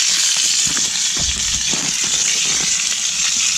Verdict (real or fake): real